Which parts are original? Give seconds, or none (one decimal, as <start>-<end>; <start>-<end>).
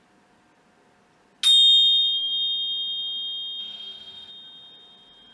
0.0-3.6; 4.3-5.3